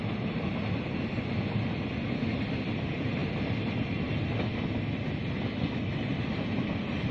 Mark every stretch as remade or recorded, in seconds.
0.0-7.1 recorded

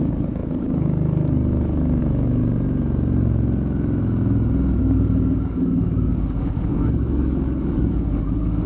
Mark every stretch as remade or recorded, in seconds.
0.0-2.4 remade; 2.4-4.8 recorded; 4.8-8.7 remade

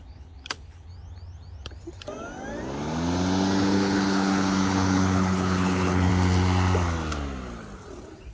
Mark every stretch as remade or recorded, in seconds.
0.0-0.9 remade; 0.9-3.6 recorded; 3.6-6.1 remade; 6.1-8.3 recorded

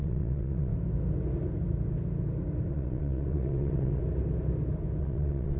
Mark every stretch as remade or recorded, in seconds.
0.0-0.7 remade; 0.7-2.7 recorded; 2.7-4.0 remade; 4.0-5.0 recorded; 5.0-5.6 remade

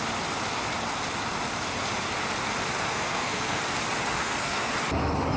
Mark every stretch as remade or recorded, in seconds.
0.0-2.9 recorded; 2.9-3.6 remade; 3.6-4.2 recorded; 4.2-4.7 remade; 4.7-5.4 recorded

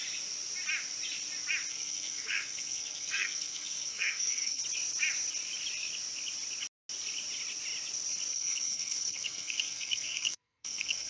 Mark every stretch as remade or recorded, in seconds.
0.0-1.7 recorded; 1.7-4.6 remade; 4.6-8.3 recorded; 8.3-11.1 remade